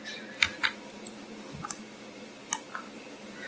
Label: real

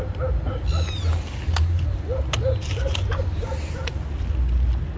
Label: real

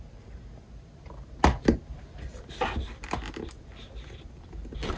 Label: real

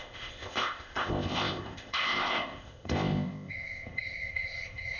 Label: fake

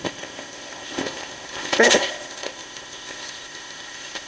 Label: fake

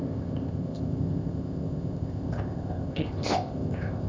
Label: fake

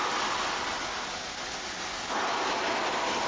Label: real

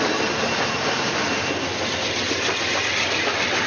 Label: real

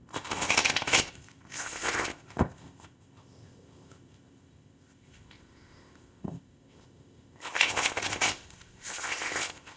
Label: fake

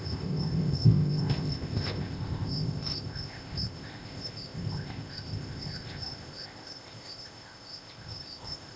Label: fake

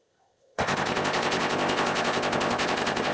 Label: fake